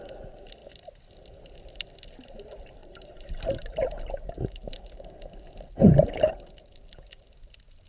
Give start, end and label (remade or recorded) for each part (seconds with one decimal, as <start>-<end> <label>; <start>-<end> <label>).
0.0-2.8 recorded; 2.8-3.4 remade; 3.4-7.9 recorded